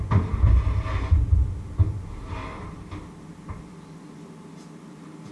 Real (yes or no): yes